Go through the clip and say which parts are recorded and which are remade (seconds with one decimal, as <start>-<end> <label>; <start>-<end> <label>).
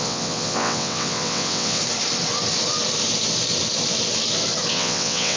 0.0-1.8 remade; 1.8-4.7 recorded; 4.7-5.4 remade